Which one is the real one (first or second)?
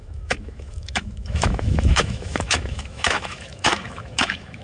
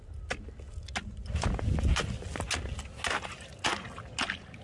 second